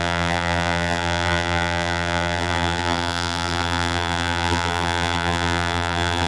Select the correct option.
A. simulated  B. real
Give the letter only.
A